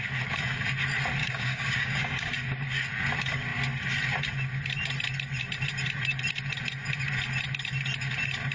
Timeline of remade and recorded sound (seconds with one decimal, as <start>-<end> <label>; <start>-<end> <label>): 0.0-1.2 recorded; 1.2-2.3 remade; 2.3-8.5 recorded